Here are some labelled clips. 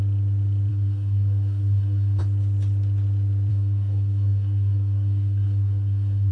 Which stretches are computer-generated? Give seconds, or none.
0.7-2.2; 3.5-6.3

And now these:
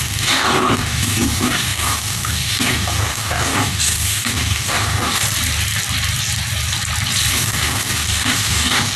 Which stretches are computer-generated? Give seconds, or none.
0.0-5.2; 7.3-9.0